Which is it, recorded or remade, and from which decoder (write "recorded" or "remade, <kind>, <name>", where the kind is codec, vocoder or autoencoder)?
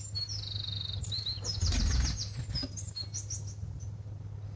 recorded